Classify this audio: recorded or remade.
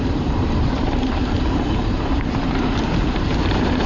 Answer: remade